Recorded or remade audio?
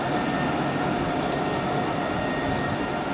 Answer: recorded